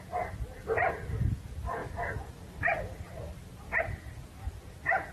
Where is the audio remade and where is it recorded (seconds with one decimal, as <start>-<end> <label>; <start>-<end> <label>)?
0.0-5.1 recorded